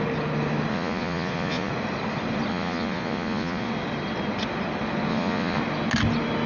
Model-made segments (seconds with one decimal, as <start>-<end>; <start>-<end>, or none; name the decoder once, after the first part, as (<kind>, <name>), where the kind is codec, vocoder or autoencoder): 0.7-1.7 (vocoder, Vocos); 2.5-3.7; 5.1-5.6